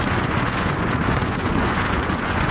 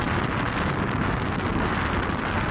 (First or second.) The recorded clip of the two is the second